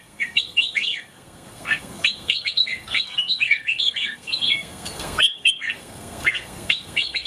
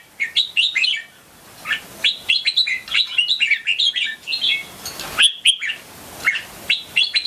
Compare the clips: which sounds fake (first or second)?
first